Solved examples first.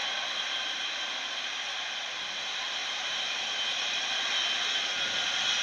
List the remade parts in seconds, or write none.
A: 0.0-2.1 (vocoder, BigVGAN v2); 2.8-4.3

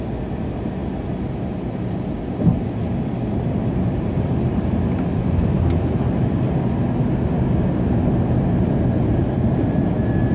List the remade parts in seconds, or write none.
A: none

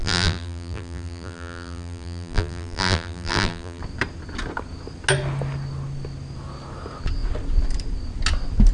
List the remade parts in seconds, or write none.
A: 0.0-3.8 (vocoder, BigVGAN v2)

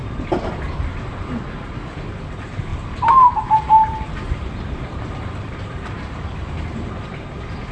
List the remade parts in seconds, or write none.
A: 2.7-6.9 (vocoder, BigVGAN v2)